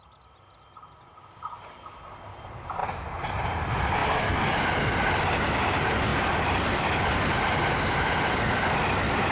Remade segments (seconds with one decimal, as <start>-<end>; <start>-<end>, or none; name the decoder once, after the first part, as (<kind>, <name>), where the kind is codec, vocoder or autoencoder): 6.1-6.8 (vocoder, BigVGAN v2)